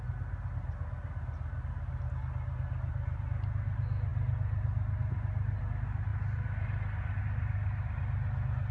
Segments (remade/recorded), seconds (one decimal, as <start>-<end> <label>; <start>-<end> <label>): 0.0-8.7 recorded